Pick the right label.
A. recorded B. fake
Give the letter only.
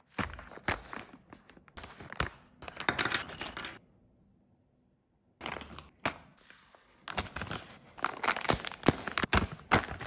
A